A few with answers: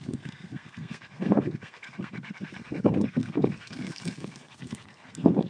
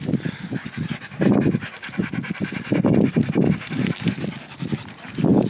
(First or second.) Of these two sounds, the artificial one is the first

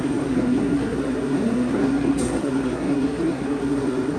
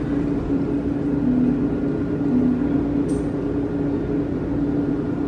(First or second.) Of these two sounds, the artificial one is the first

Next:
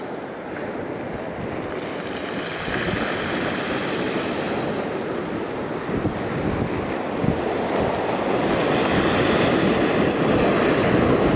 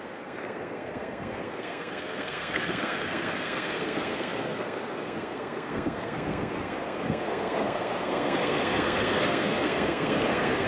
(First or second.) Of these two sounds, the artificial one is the second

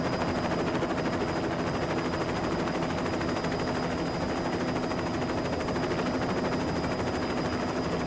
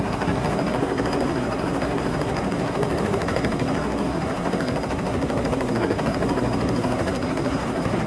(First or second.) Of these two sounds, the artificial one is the second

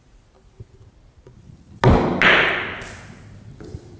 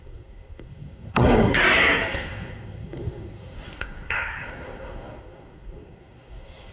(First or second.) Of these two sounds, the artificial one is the second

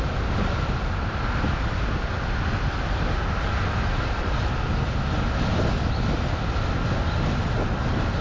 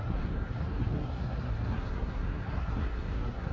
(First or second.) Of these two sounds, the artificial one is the second